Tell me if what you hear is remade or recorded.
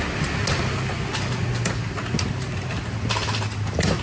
recorded